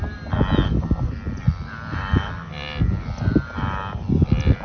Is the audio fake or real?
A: real